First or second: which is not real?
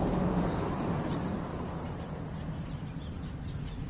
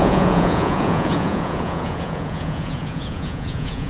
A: second